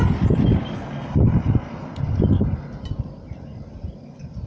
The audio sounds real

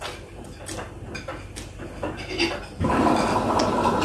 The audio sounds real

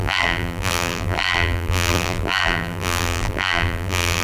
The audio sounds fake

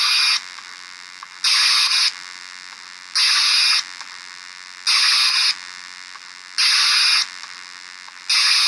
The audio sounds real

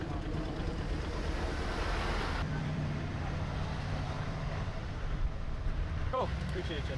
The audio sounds fake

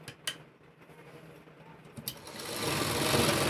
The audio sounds real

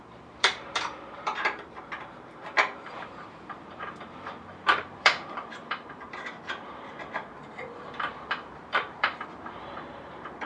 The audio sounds fake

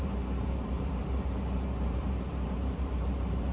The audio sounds fake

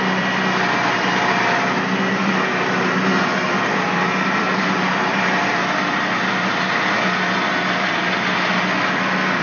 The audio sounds fake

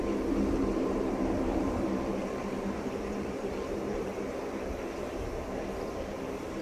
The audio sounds fake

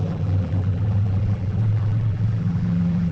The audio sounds fake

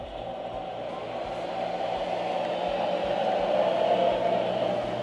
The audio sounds real